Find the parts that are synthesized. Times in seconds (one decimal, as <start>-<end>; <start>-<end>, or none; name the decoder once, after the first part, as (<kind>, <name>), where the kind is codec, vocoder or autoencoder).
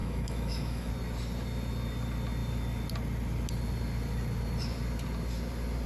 0.0-0.9 (autoencoder, DAC-VAE)